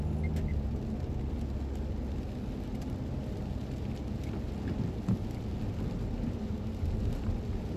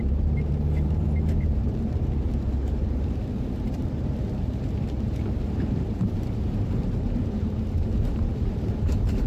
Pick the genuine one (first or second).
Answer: first